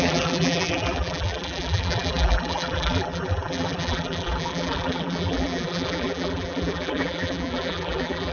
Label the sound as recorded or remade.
remade